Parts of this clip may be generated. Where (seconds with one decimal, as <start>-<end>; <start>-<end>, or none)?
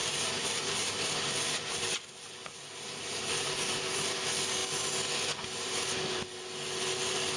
0.0-1.0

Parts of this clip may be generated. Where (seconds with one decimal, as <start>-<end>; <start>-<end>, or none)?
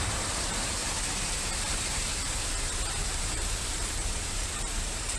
0.0-0.8; 1.6-2.1; 3.0-5.2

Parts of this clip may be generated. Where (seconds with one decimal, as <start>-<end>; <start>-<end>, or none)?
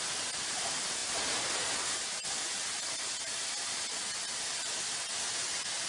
none